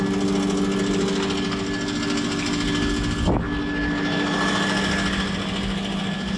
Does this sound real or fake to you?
real